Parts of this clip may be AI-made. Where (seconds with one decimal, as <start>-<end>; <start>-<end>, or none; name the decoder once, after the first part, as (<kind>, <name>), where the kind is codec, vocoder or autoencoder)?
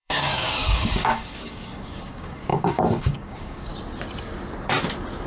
0.0-3.7 (codec, DAC)